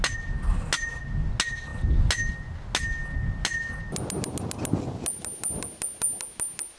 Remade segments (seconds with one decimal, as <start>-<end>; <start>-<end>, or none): none